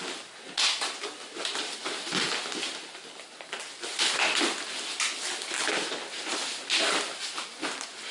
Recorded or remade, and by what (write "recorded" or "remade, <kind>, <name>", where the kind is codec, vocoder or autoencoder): recorded